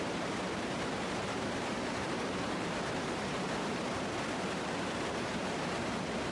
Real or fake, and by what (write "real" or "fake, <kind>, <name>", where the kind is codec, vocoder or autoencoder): fake, vocoder, BigVGAN v2